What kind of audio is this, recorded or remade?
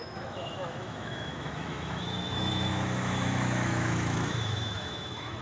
remade